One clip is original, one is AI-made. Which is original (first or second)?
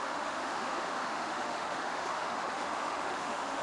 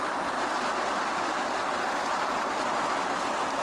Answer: second